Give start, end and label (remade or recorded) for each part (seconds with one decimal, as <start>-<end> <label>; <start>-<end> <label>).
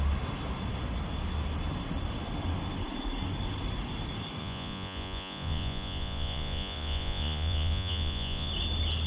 0.0-4.4 recorded; 4.4-8.5 remade; 8.5-9.1 recorded